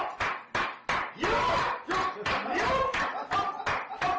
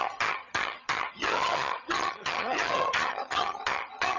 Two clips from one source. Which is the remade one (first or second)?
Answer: second